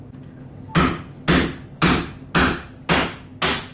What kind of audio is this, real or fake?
real